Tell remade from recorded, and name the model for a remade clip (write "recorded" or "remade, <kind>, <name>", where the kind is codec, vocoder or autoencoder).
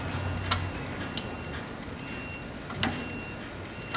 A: recorded